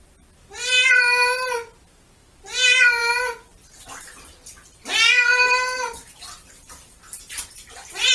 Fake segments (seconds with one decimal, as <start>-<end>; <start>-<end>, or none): none